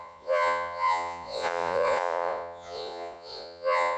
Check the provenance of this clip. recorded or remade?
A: remade